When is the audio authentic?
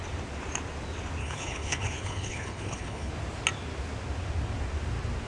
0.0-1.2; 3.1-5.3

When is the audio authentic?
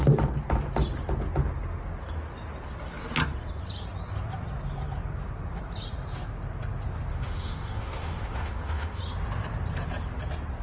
0.0-7.1; 9.0-10.6